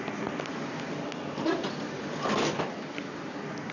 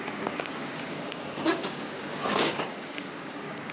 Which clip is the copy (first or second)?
second